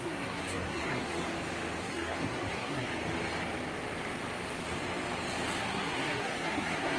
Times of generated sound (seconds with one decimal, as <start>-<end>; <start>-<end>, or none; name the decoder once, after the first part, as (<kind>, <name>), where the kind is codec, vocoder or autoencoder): 0.0-1.3 (codec, SNAC); 1.8-2.9; 5.6-7.0